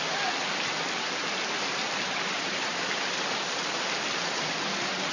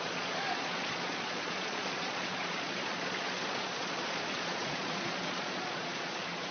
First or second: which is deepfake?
second